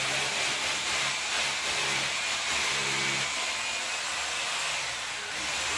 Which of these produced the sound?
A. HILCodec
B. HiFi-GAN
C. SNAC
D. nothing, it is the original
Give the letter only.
D